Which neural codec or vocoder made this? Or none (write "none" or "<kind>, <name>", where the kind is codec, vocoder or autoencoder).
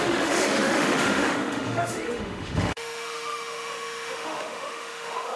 autoencoder, DAC-VAE